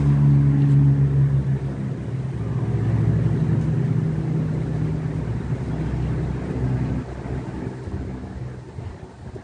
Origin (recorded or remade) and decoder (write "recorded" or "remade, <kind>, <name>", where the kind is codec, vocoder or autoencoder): recorded